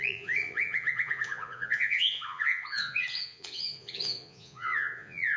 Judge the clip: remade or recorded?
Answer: remade